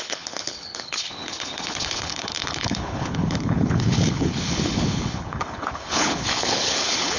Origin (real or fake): fake